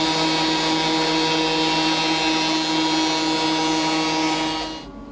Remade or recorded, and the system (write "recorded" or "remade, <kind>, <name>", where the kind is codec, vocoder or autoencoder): recorded